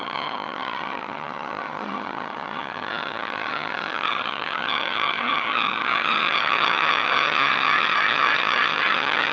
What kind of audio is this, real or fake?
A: fake